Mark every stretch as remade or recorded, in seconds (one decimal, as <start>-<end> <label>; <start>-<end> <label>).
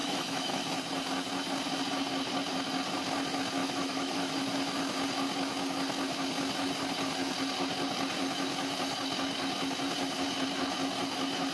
0.0-0.6 remade; 0.6-3.6 recorded; 3.6-4.3 remade; 4.3-11.5 recorded